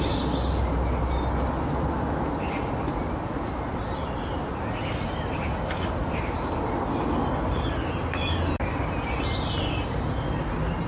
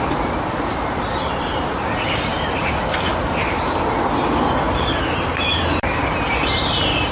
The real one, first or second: first